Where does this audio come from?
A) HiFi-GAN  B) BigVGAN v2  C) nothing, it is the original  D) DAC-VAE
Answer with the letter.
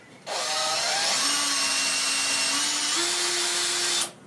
C